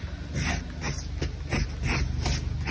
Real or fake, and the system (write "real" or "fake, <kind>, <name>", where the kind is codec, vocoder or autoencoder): real